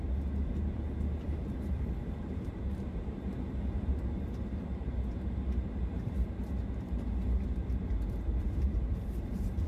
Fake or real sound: fake